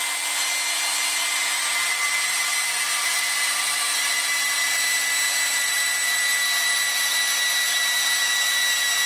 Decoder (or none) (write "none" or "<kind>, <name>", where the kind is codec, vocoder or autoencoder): none